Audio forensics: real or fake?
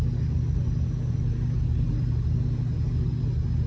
real